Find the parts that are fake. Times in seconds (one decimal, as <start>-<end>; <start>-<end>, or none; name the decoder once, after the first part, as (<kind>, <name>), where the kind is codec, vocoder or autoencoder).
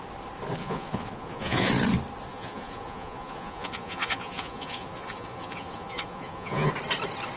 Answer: 0.6-1.7 (vocoder, Vocos); 2.3-6.7